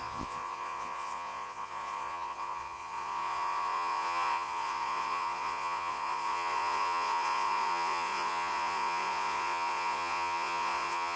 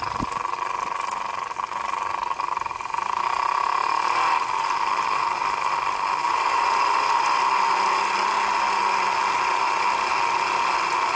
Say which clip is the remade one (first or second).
first